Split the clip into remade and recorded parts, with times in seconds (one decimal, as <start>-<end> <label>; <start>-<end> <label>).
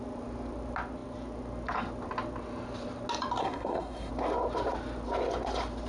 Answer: 0.0-3.4 recorded; 3.4-4.1 remade; 4.1-5.9 recorded